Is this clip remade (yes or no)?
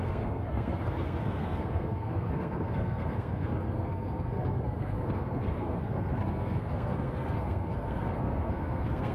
yes